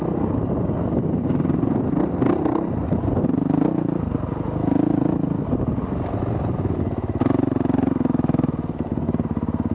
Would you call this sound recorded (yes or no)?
yes